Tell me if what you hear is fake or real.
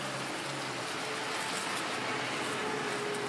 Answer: real